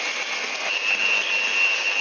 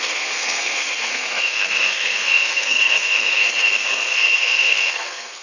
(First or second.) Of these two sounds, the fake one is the second